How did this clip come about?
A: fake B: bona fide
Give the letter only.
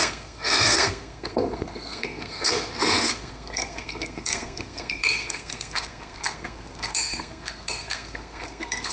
A